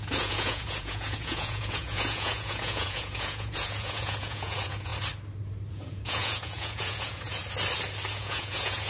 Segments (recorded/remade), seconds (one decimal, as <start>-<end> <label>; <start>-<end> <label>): 0.0-4.9 remade; 4.9-5.7 recorded; 5.7-7.4 remade; 7.4-8.1 recorded; 8.1-8.9 remade